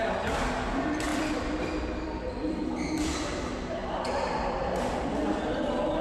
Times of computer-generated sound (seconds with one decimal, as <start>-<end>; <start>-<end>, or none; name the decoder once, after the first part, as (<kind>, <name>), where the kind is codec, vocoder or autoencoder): 1.1-2.6 (vocoder, BigVGAN v2); 3.8-4.8